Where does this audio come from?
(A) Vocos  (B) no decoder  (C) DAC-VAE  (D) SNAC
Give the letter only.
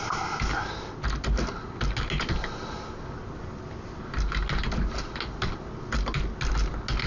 B